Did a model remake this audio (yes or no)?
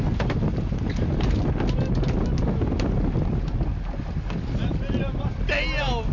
no